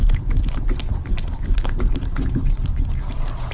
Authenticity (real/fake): fake